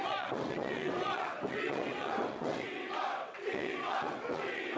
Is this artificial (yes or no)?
yes